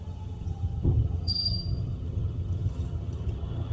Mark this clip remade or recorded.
remade